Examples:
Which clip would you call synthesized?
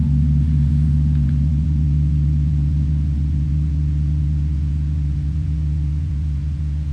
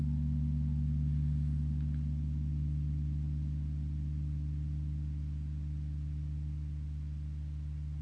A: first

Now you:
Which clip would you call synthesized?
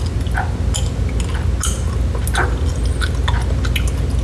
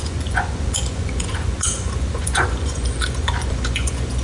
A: second